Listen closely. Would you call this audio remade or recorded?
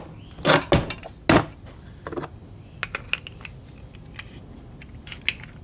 recorded